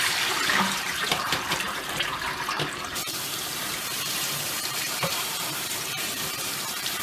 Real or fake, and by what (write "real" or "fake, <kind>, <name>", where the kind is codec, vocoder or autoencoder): fake, vocoder, BigVGAN v2